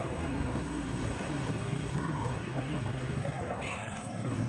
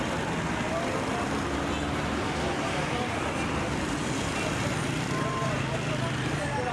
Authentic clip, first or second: second